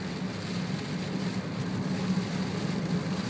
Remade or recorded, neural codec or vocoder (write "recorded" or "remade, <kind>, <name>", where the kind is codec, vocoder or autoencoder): recorded